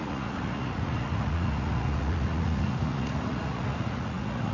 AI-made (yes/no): yes